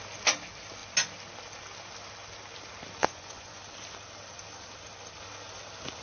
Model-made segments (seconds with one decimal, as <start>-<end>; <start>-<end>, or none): 3.0-3.6